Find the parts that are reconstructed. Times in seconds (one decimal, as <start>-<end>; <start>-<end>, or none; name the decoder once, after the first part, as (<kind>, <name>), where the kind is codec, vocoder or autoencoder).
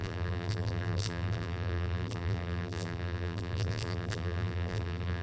0.0-5.2 (vocoder, BigVGAN v2)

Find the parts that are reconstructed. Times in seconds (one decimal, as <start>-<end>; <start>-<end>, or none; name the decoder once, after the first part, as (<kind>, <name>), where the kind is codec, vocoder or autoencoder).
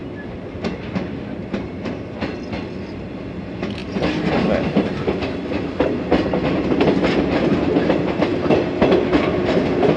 none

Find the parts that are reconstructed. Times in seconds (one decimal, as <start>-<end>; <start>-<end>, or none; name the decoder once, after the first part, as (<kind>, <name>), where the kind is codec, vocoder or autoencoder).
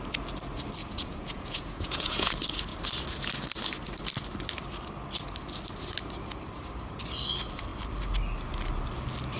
0.8-2.3 (vocoder, Vocos)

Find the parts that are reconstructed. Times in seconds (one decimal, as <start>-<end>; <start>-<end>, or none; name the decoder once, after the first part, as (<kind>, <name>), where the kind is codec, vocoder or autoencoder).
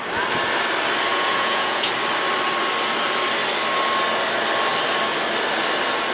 1.1-1.9 (vocoder, Vocos)